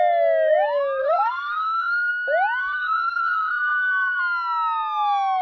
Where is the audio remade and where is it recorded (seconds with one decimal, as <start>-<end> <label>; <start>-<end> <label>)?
0.0-1.0 recorded; 1.0-2.1 remade; 2.1-2.6 recorded; 2.6-4.2 remade; 4.2-5.4 recorded